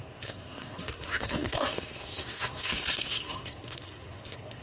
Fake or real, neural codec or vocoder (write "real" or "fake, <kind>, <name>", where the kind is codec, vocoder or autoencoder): fake, codec, SNAC